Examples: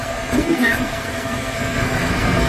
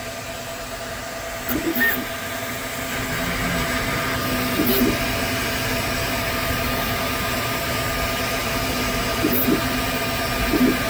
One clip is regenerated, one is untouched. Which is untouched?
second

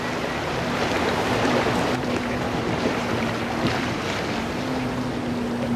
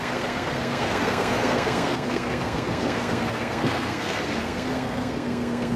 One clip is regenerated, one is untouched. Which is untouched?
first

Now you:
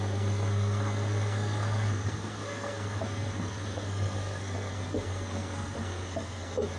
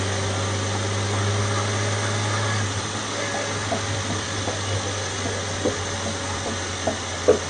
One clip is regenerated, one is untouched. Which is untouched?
second